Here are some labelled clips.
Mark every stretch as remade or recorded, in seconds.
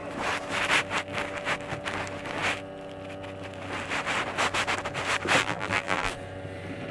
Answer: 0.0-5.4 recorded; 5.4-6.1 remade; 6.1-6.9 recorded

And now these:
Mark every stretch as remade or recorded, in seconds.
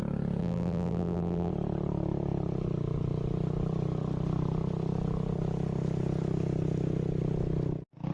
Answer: 0.0-0.4 recorded; 0.4-1.5 remade; 1.5-8.1 recorded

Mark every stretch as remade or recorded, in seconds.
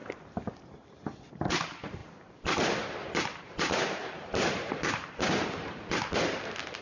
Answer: 0.0-2.0 recorded; 2.0-5.8 remade; 5.8-6.8 recorded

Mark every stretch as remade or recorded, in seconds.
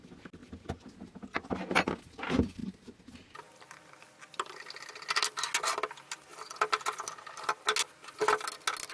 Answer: 0.0-8.9 recorded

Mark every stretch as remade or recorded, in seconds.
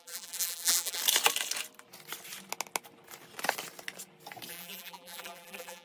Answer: 0.0-1.0 remade; 1.0-4.5 recorded; 4.5-5.8 remade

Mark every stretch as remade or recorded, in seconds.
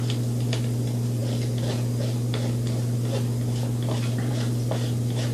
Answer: 0.0-5.3 recorded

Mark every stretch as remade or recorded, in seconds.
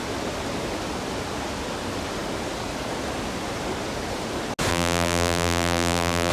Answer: 0.0-4.7 recorded; 4.7-6.3 remade